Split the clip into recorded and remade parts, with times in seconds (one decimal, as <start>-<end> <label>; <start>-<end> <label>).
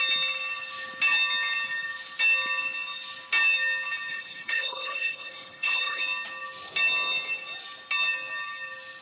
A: 0.0-4.1 recorded; 4.1-6.0 remade; 6.0-9.0 recorded